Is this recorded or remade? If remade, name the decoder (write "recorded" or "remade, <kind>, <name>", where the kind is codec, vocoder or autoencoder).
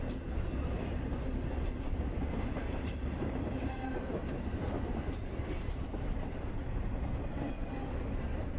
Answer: recorded